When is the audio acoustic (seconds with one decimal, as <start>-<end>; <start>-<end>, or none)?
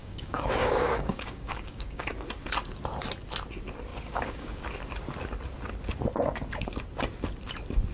2.0-3.9; 4.6-7.9